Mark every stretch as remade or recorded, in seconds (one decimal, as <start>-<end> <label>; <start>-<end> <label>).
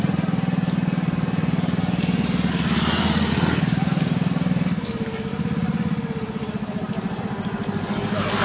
0.0-8.4 recorded